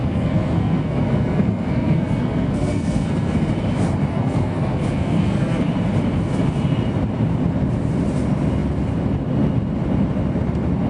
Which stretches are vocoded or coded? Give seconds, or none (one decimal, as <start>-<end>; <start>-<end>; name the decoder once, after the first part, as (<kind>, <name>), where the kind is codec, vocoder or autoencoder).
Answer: 0.0-3.5 (codec, SNAC); 4.1-5.7